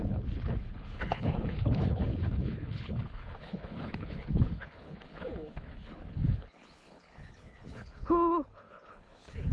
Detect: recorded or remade remade